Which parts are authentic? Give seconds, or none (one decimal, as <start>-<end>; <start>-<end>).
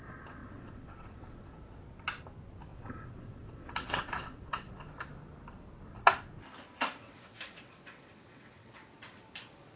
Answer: 0.0-0.4; 1.6-2.7; 4.7-7.0; 8.8-9.8